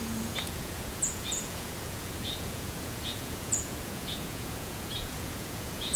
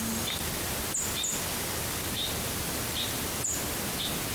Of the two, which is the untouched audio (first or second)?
second